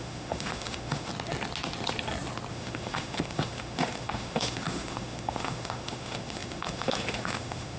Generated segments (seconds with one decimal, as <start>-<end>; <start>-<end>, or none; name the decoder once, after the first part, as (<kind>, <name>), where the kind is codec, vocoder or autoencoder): 0.0-1.1 (autoencoder, DAC-VAE); 2.5-7.8